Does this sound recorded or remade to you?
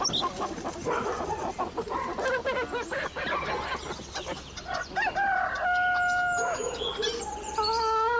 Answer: recorded